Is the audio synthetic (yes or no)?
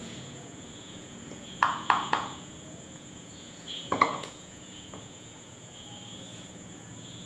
yes